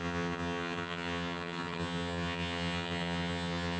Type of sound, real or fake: fake